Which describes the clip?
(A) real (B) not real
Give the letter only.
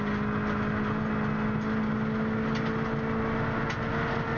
A